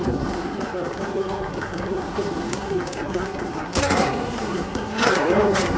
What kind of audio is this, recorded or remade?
remade